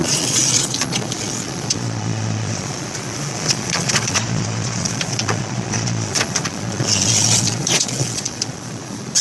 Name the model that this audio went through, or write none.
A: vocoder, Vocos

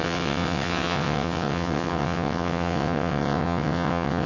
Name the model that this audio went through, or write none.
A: vocoder, WaveNeXt